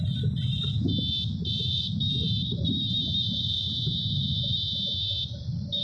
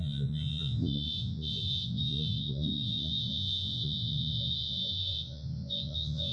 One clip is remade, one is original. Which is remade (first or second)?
second